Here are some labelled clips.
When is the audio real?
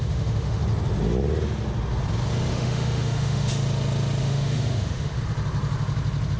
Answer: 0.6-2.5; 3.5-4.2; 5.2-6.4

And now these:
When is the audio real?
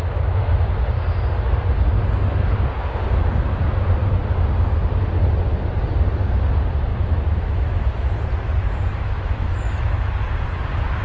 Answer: 0.0-6.9; 7.8-8.9; 10.1-11.0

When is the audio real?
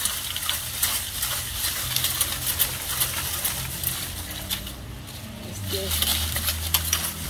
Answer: 0.0-7.3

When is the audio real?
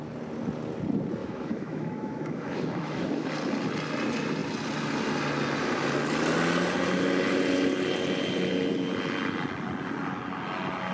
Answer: 0.0-1.2; 3.3-10.9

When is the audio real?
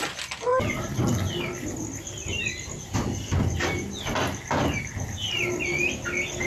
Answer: 0.0-6.5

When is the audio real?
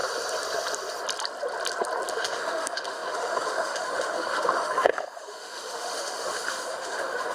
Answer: 0.0-2.1